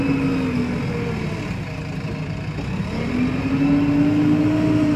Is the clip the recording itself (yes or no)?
yes